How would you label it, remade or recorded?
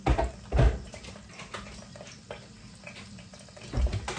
recorded